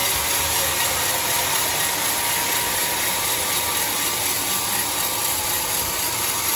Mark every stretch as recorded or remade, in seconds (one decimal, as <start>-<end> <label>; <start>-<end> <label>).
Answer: 0.0-2.3 recorded; 2.3-6.6 remade